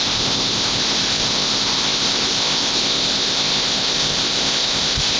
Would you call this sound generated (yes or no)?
yes